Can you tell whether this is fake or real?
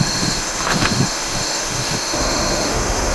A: fake